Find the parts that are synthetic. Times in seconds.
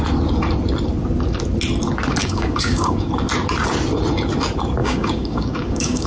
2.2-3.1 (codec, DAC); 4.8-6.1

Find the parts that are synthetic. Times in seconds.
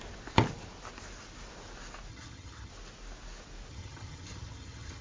2.1-2.7 (vocoder, HiFi-GAN); 3.7-5.0